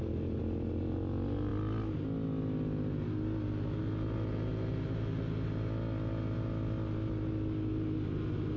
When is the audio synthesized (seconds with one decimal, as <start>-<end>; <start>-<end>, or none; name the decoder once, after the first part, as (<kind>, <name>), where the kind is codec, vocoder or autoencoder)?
none